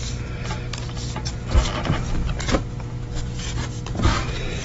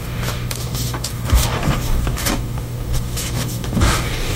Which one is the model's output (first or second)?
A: second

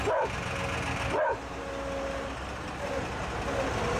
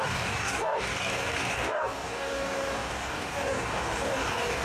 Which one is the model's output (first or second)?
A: second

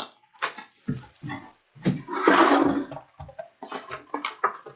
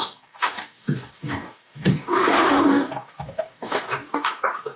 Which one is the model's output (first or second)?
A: second